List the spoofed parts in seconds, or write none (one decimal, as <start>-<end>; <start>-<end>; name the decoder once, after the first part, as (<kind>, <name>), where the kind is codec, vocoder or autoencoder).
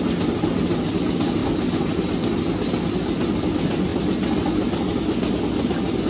none